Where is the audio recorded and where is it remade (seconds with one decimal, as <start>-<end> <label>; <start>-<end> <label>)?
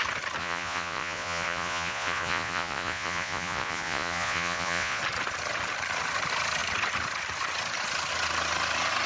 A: 0.0-0.4 recorded; 0.4-5.0 remade; 5.0-9.1 recorded